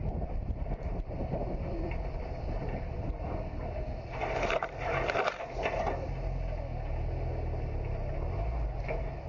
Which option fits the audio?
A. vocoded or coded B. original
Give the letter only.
B